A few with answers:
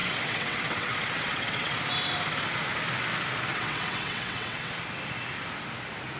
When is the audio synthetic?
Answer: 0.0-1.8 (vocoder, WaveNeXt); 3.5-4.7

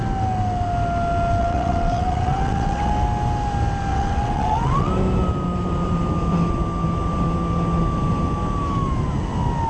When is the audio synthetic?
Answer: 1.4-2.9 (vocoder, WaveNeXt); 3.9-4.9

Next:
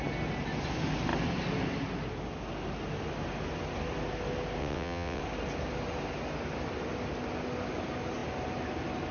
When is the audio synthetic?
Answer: 4.6-5.2 (vocoder, WaveNeXt)